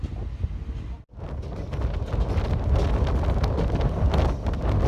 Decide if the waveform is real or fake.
real